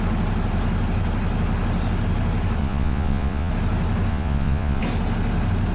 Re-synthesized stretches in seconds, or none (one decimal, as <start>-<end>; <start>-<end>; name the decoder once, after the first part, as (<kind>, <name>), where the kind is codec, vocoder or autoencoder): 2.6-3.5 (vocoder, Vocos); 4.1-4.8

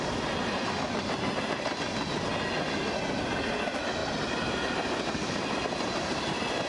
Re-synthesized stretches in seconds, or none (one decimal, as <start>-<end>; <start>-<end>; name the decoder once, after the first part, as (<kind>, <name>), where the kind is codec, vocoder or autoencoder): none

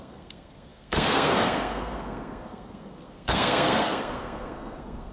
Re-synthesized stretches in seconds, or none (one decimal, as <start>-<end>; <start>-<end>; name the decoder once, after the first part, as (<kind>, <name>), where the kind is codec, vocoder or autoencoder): 0.0-5.1 (codec, SNAC)